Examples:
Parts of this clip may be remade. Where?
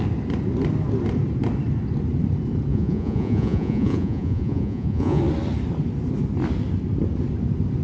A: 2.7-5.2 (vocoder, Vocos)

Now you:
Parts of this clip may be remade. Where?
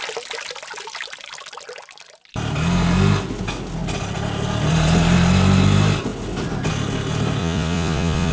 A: 7.4-8.3 (vocoder, Vocos)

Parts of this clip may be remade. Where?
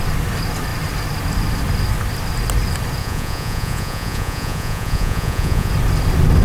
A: 3.0-5.7 (vocoder, Vocos)